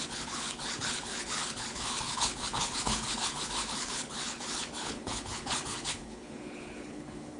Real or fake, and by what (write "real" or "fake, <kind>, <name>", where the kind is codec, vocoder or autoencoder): fake, codec, HILCodec